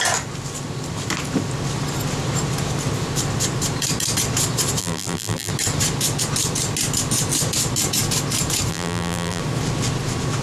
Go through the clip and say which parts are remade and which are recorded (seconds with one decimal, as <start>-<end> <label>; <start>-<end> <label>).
0.0-4.8 recorded; 4.8-5.5 remade; 5.5-8.7 recorded; 8.7-9.4 remade; 9.4-10.4 recorded